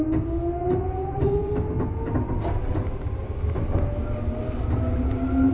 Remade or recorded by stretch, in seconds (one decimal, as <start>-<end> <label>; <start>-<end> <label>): 0.0-0.6 recorded; 0.6-1.5 remade; 1.5-5.5 recorded